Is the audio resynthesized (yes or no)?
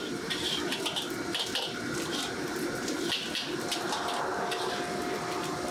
no